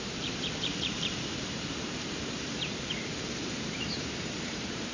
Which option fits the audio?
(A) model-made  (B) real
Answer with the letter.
A